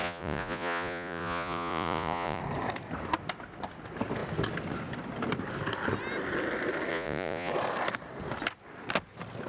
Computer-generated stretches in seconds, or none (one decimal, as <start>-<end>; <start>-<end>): 0.0-2.4; 6.9-7.5